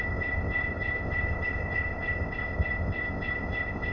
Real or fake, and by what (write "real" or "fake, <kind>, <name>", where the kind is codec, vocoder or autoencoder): fake, codec, ZipCodec